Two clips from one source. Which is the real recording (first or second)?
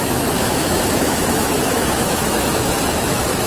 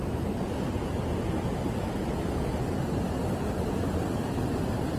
second